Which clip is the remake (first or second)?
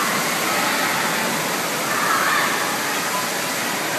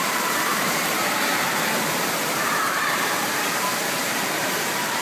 second